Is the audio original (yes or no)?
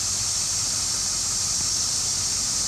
yes